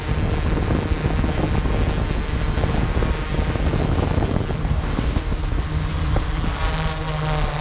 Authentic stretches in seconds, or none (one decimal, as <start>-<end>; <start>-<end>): 0.0-4.6; 5.4-7.6